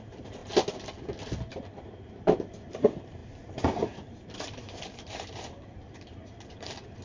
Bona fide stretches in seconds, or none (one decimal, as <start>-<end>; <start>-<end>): 0.4-1.5